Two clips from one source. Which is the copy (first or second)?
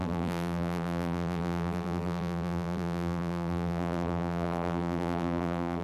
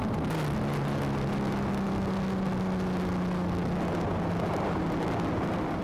first